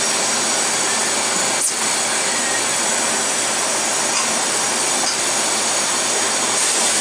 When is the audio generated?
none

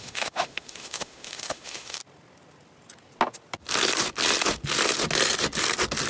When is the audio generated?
0.0-2.0 (autoencoder, DAC-VAE)

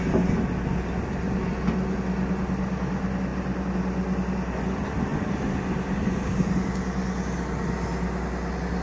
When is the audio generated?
none

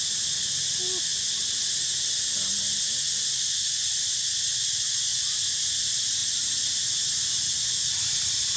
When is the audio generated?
none

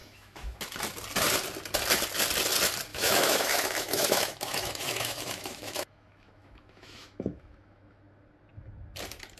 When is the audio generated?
0.0-0.6 (autoencoder, DAC-VAE); 2.9-8.0